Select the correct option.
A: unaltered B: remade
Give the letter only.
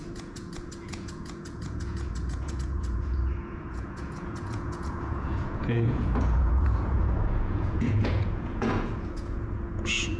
B